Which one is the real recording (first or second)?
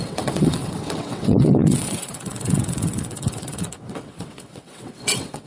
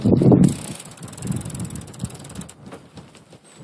second